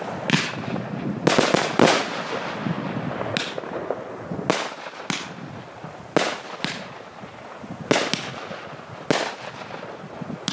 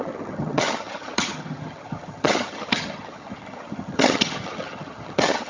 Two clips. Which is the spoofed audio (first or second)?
second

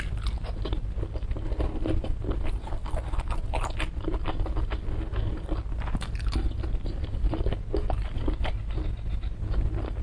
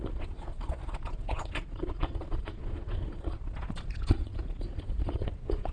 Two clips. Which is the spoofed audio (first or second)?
second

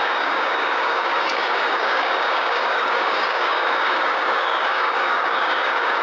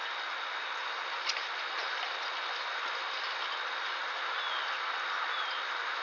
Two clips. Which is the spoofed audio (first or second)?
first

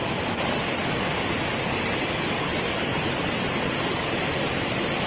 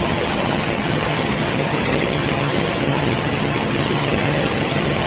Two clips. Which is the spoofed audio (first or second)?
second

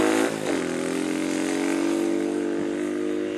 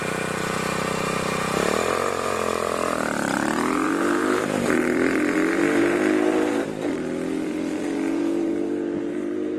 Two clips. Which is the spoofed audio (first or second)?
second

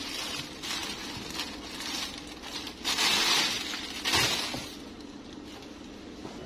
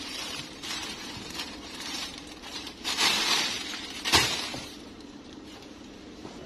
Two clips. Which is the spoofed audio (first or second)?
second